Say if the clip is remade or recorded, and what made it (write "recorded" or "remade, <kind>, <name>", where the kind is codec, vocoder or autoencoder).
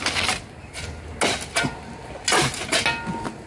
recorded